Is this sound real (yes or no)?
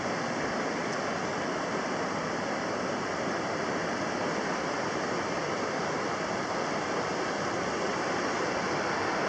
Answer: yes